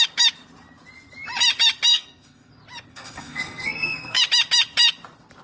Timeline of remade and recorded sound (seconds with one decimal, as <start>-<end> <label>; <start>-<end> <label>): 0.0-1.9 recorded; 1.9-2.5 remade; 2.5-2.9 recorded; 2.9-4.2 remade; 4.2-5.4 recorded